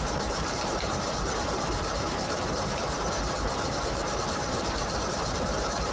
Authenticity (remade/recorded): remade